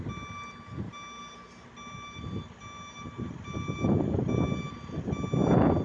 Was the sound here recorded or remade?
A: recorded